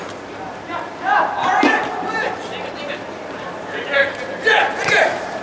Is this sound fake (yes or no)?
no